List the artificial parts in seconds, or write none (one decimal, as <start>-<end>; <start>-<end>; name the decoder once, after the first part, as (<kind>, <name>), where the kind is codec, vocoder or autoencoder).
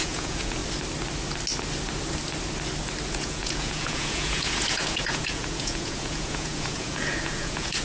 0.0-0.6 (vocoder, Vocos); 3.1-7.8